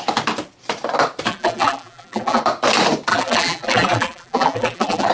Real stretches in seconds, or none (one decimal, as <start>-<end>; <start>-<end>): 0.0-1.3; 2.4-3.1